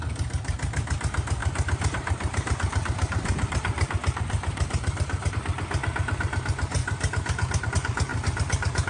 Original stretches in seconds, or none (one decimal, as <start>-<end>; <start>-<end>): 0.0-1.4; 5.3-6.8; 7.7-8.9